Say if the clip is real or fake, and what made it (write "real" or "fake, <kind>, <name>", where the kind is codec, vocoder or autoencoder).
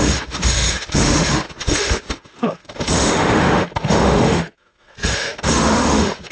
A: fake, autoencoder, DAC-VAE